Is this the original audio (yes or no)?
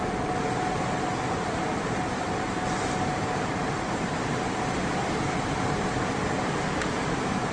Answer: no